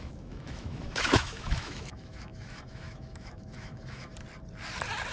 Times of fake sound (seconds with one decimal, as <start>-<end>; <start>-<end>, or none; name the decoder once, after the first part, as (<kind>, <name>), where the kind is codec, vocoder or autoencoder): 0.0-4.1 (autoencoder, DAC-VAE)